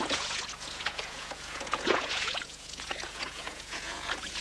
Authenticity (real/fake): fake